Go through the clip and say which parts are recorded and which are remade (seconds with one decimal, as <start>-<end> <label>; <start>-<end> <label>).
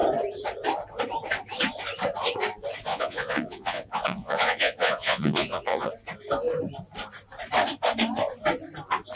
0.0-2.9 recorded; 2.9-5.9 remade; 5.9-9.2 recorded